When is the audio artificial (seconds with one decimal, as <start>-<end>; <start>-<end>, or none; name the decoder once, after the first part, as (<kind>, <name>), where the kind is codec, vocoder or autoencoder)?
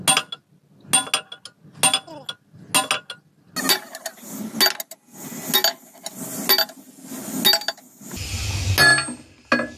none